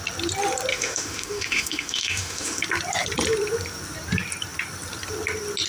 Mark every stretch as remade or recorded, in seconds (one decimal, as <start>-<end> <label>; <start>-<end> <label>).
0.0-0.7 recorded; 0.7-2.6 remade; 2.6-5.7 recorded